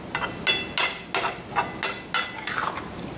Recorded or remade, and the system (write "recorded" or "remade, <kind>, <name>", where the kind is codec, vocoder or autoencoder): recorded